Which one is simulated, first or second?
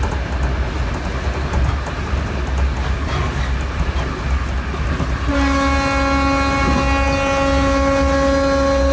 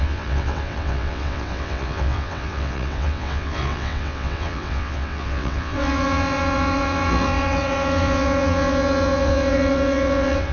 second